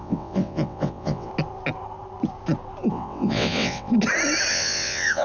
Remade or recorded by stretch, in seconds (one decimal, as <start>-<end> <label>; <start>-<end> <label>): 0.0-1.3 remade; 1.3-2.9 recorded; 2.9-3.9 remade; 3.9-4.5 recorded; 4.5-5.2 remade

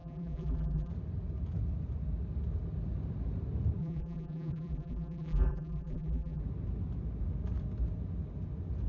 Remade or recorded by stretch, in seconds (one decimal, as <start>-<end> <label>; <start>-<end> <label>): 0.0-0.9 remade; 0.9-3.8 recorded; 3.8-6.4 remade; 6.4-8.9 recorded

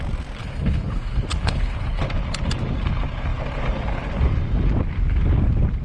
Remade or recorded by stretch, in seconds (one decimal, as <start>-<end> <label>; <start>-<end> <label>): 0.0-0.4 recorded; 0.4-2.0 remade; 2.0-5.8 recorded